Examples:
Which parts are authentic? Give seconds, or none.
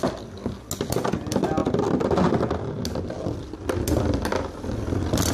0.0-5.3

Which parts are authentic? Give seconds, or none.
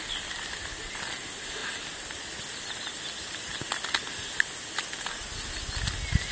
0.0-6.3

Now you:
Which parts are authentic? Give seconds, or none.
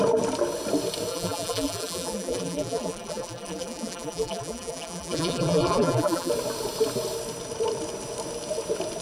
0.0-1.1; 6.3-9.0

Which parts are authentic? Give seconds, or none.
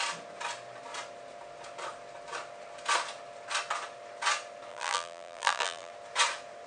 0.0-4.7; 5.9-6.7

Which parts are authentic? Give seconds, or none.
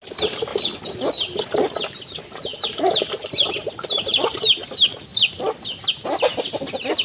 0.0-0.5; 1.8-2.5; 4.0-5.1; 5.7-7.0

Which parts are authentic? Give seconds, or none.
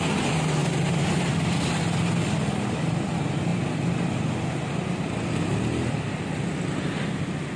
0.0-7.6